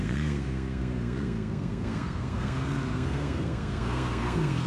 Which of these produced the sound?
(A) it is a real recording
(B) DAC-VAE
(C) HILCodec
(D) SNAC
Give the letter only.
D